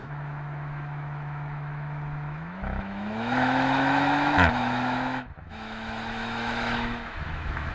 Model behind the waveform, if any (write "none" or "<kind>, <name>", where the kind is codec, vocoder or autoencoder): autoencoder, DAC-VAE